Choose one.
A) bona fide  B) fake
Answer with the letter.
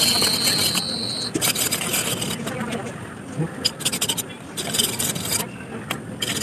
A